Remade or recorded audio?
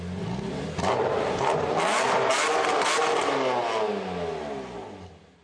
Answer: recorded